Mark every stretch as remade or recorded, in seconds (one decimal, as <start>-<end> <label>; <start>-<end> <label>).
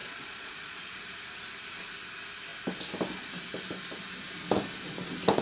0.0-0.9 remade; 0.9-5.4 recorded